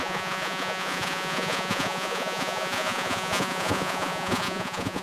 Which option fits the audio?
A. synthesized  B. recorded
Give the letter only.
A